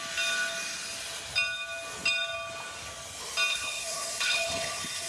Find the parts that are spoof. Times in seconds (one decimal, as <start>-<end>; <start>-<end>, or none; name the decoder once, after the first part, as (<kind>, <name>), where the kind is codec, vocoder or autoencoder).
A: 3.5-5.1 (codec, HILCodec)